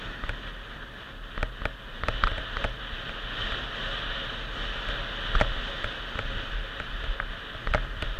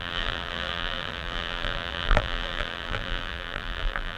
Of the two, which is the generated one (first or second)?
second